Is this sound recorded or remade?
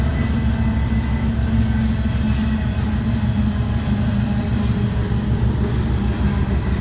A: recorded